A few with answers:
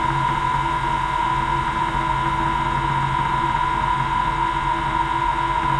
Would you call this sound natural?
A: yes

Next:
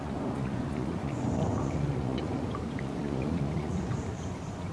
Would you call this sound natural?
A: no